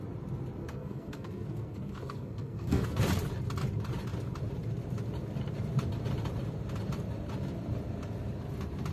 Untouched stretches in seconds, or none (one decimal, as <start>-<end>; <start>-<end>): 0.0-0.6; 3.0-8.9